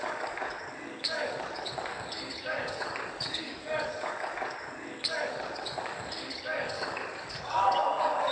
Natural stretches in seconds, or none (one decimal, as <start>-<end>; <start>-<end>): none